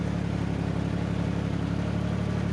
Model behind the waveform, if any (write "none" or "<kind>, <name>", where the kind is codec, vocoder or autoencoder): none